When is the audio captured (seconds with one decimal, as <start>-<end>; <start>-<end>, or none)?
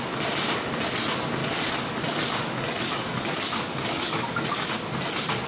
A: 0.0-1.4; 4.7-5.5